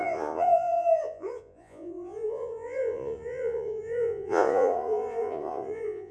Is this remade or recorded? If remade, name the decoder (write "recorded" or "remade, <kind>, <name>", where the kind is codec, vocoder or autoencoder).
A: remade, vocoder, Vocos